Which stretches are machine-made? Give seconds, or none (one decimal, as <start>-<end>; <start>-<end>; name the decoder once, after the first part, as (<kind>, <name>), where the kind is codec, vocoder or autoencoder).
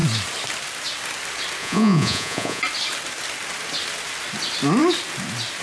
1.6-2.6 (vocoder, Vocos)